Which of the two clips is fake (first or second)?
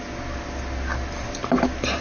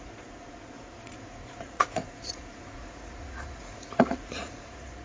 second